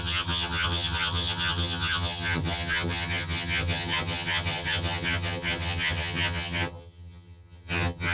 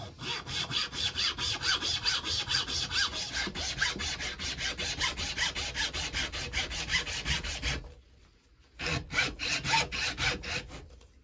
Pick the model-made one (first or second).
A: first